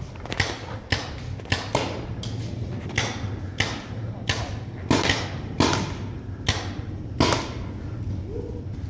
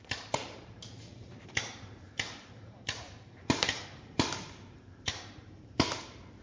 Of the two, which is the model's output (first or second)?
second